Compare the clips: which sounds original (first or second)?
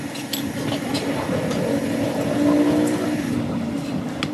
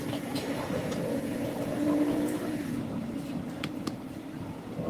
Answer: first